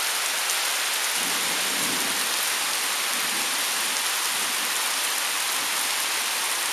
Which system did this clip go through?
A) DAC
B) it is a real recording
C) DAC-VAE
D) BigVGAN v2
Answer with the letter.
B